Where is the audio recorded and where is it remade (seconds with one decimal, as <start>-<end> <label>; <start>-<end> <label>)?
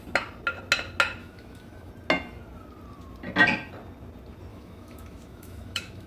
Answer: 0.0-1.2 recorded; 1.2-1.9 remade; 1.9-4.5 recorded; 4.5-6.1 remade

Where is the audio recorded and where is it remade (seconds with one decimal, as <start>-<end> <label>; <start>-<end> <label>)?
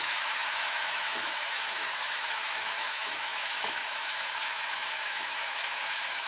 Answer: 0.0-6.3 remade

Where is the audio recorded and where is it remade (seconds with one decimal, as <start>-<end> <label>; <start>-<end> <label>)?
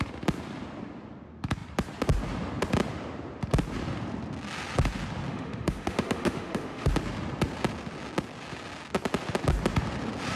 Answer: 0.0-5.3 recorded; 5.3-6.9 remade; 6.9-10.4 recorded